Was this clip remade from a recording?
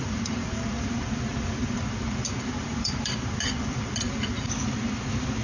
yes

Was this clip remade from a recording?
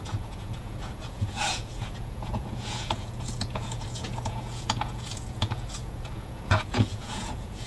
yes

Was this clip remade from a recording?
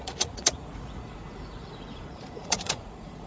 yes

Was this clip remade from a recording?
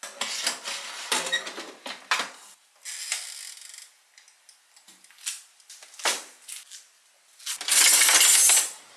no